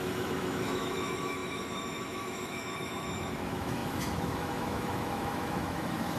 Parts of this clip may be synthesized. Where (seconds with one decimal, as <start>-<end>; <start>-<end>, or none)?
0.0-6.2